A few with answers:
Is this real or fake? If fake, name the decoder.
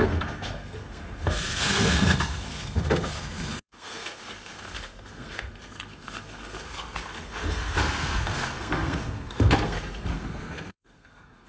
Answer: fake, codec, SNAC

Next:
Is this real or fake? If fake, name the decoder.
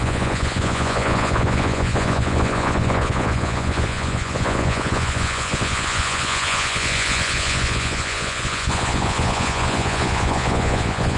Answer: fake, vocoder, Vocos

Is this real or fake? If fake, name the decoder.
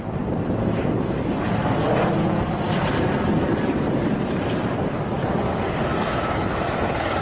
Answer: fake, vocoder, BigVGAN v2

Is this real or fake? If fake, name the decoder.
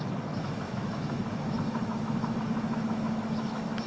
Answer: fake, autoencoder, DAC-VAE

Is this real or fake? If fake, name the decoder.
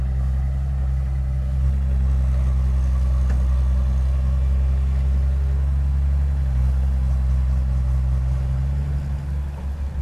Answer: real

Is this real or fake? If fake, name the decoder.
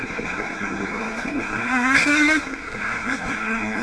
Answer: fake, codec, SNAC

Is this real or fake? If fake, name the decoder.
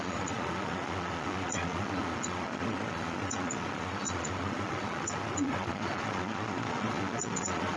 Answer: fake, vocoder, Vocos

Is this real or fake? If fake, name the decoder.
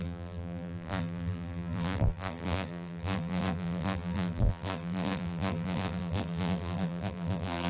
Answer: fake, vocoder, BigVGAN v2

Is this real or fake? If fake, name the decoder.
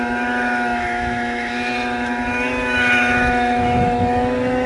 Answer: fake, autoencoder, DAC-VAE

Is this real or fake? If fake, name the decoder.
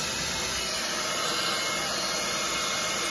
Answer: real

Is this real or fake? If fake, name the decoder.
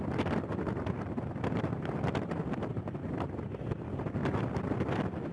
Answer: real